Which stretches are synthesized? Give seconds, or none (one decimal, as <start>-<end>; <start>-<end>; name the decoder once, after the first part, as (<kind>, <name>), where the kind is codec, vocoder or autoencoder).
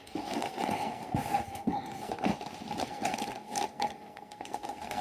0.0-2.3 (codec, SNAC); 2.8-5.0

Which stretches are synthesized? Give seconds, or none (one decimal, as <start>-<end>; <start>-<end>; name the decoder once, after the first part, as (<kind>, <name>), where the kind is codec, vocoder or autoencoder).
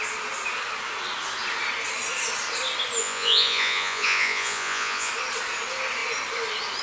3.0-5.1 (vocoder, Vocos)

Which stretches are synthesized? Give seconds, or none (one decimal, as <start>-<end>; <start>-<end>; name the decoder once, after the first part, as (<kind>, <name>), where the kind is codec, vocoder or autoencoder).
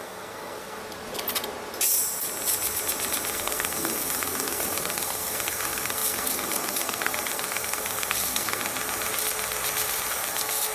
0.0-0.8 (codec, SNAC); 3.3-8.7; 10.1-10.7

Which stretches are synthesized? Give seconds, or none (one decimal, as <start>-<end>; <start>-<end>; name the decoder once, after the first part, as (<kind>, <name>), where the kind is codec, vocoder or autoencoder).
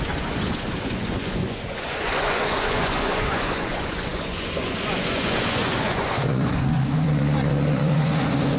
0.0-8.6 (vocoder, Vocos)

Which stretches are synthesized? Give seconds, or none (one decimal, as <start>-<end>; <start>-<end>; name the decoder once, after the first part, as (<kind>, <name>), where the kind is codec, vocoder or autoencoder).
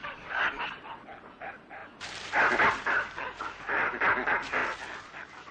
0.0-0.6 (codec, DAC)